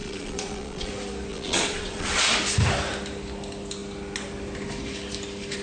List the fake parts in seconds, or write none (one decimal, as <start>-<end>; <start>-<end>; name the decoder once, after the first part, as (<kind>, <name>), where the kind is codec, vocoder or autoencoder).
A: 0.0-0.9 (vocoder, Vocos); 1.3-2.3